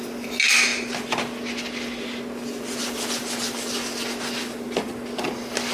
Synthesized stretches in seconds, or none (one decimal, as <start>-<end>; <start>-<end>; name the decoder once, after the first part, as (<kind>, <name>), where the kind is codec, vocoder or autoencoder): none